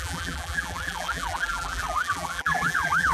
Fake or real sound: fake